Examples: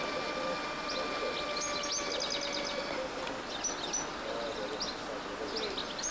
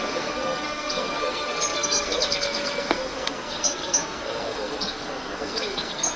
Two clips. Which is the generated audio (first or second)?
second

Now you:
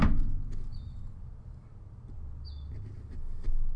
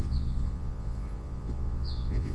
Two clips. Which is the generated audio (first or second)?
second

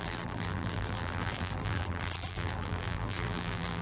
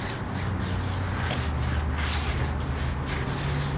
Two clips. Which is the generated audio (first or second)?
first